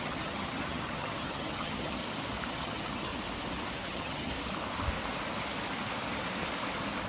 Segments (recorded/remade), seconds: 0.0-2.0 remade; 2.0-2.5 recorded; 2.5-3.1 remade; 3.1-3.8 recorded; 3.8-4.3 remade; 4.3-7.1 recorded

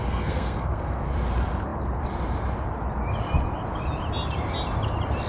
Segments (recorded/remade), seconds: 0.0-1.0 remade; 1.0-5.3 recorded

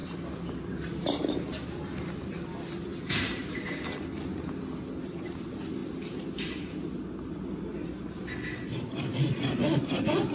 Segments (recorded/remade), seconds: 0.0-3.5 remade; 3.5-5.8 recorded; 5.8-6.5 remade; 6.5-10.3 recorded